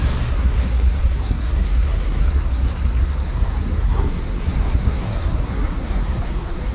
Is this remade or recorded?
remade